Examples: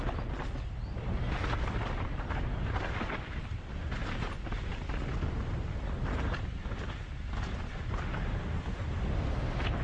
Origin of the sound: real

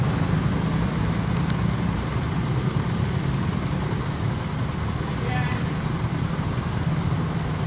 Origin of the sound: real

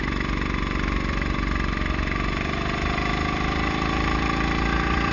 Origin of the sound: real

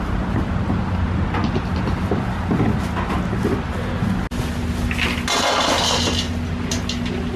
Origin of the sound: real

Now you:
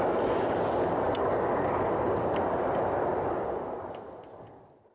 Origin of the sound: real